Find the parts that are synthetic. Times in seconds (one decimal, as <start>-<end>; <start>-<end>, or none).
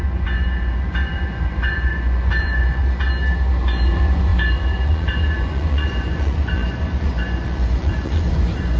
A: 0.0-2.8; 3.6-8.8